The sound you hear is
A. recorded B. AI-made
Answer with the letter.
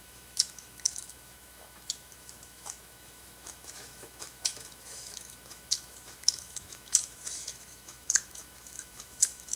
B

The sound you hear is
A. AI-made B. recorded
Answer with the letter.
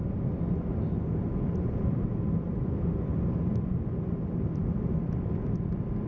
A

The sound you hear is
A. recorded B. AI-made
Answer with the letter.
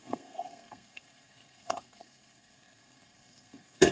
B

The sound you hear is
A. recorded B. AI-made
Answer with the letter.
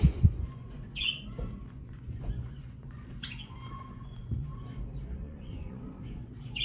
B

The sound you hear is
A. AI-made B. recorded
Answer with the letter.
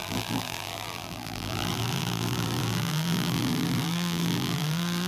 A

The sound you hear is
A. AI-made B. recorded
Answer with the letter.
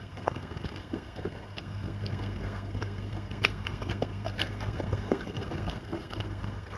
A